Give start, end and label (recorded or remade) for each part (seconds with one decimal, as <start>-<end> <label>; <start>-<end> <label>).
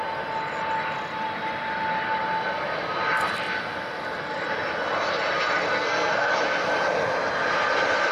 0.0-5.7 recorded; 5.7-6.3 remade; 6.3-8.1 recorded